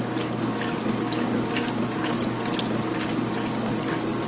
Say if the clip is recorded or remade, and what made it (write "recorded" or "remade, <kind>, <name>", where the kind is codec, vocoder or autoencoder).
recorded